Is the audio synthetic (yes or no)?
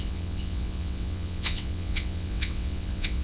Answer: yes